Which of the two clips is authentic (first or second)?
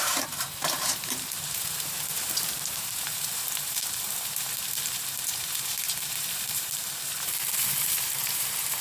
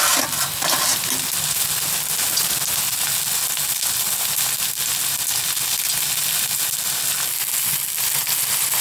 second